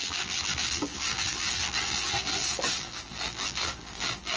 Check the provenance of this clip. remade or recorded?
remade